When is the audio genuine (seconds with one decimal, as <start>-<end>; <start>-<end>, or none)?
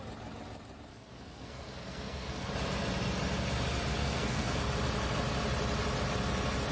0.0-0.9; 2.5-4.0; 4.6-6.7